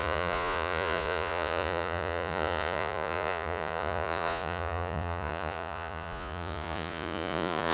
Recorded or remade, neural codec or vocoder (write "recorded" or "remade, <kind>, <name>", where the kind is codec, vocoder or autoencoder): remade, vocoder, Vocos